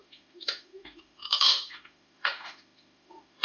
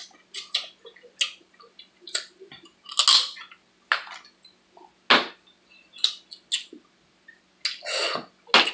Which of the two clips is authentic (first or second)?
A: second